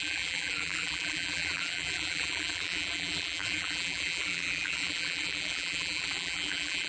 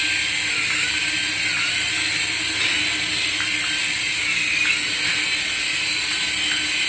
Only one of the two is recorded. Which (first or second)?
second